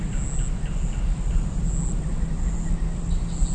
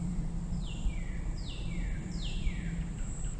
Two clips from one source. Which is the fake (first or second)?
second